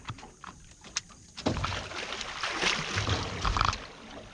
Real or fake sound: real